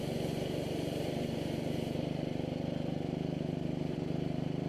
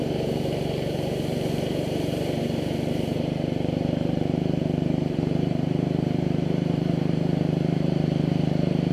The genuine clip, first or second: first